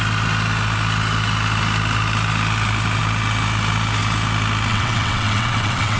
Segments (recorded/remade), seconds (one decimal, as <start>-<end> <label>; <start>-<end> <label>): 0.0-4.7 recorded; 4.7-6.0 remade